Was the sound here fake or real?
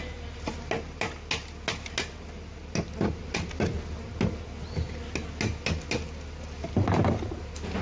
real